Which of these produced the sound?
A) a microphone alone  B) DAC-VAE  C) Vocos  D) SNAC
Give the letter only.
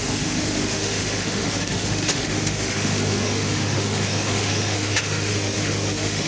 B